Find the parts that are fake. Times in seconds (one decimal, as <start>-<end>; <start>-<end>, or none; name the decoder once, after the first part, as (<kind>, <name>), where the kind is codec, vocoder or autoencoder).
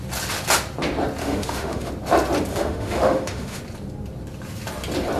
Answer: 1.2-1.9 (autoencoder, DAC-VAE); 2.5-3.6